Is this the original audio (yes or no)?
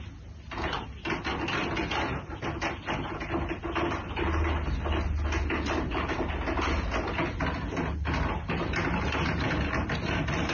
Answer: yes